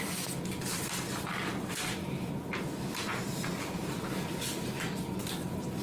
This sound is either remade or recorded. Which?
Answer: recorded